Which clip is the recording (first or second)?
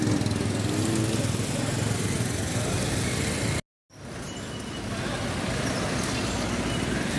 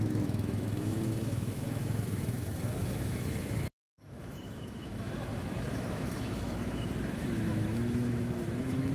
first